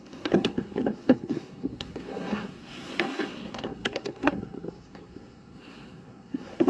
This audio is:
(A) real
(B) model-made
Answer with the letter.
B